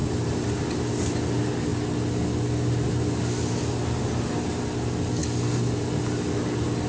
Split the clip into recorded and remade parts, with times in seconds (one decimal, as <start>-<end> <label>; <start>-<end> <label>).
0.0-6.9 recorded